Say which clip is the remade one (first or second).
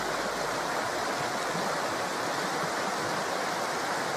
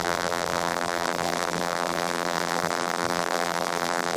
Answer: second